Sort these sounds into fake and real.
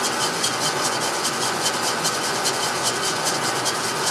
fake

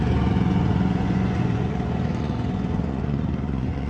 fake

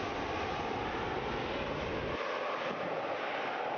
real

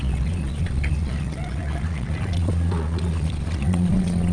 fake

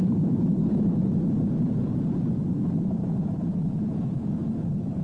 fake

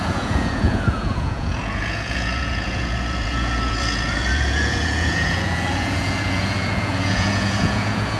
fake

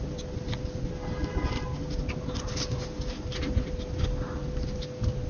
real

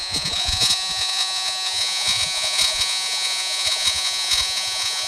fake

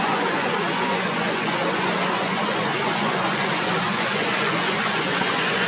fake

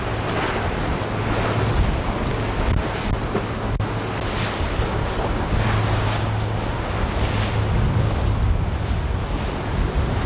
real